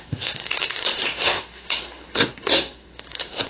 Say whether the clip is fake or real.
fake